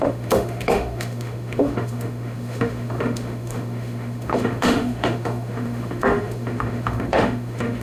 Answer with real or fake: fake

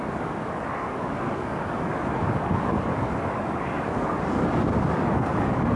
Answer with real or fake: fake